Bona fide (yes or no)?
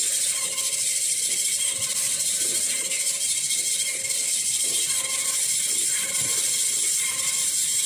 yes